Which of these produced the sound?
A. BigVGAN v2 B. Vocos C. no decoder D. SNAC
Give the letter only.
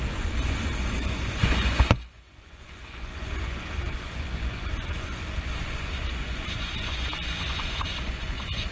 B